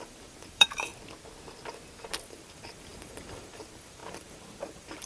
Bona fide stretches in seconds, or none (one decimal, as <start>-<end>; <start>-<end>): 0.9-2.3